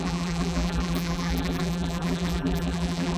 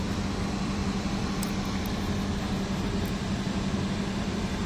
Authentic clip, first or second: second